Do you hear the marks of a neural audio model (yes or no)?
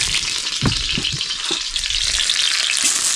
no